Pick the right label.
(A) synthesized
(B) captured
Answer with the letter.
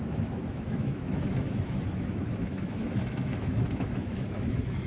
A